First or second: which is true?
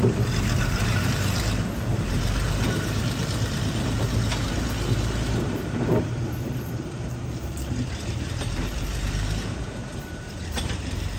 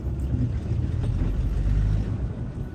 second